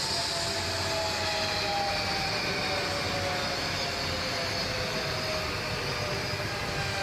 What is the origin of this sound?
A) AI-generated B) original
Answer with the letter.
B